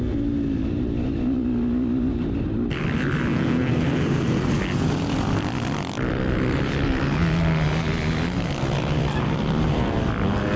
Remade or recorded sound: recorded